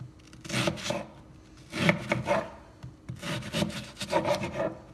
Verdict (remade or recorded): recorded